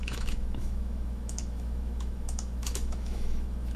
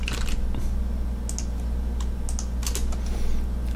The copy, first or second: first